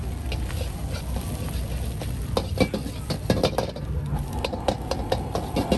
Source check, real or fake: real